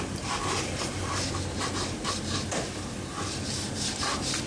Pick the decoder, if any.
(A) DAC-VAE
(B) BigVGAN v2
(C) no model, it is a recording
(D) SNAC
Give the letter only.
C